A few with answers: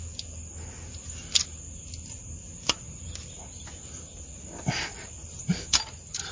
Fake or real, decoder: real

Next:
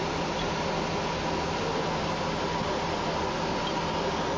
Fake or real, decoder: real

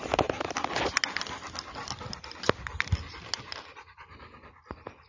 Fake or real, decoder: real